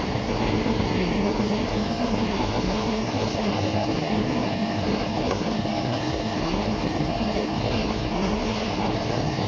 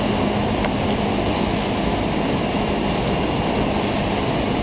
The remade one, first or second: first